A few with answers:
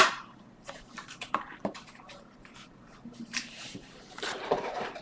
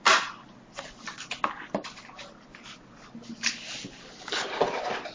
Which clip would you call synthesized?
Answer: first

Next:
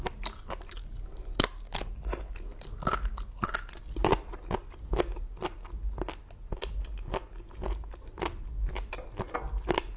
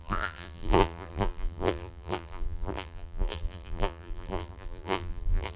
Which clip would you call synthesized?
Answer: second